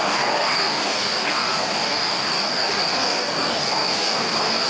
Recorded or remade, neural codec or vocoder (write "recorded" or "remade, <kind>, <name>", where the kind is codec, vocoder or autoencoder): remade, codec, DAC